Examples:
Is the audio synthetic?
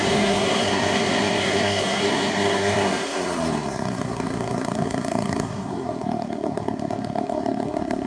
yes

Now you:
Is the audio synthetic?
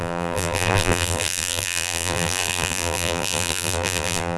yes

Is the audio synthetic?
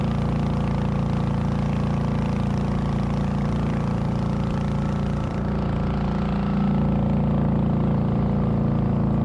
no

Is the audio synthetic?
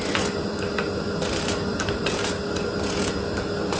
no